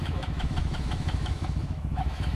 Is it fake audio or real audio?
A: fake